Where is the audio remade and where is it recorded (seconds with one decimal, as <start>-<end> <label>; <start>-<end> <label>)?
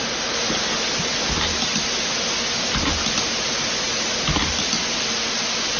0.0-5.8 recorded